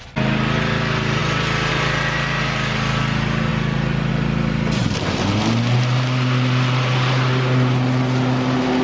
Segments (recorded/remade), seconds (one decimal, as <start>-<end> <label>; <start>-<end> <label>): 0.0-8.8 recorded